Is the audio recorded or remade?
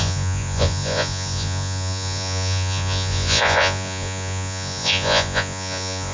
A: remade